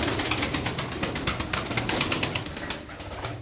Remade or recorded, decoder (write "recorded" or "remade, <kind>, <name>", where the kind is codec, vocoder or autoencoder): recorded